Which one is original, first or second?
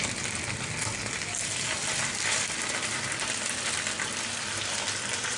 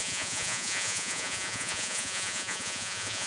first